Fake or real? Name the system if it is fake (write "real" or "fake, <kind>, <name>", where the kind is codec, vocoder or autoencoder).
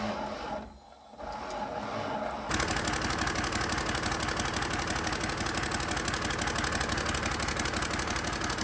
real